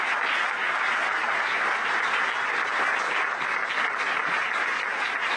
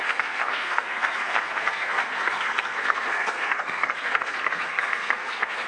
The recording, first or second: first